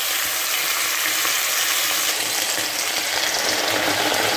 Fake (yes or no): no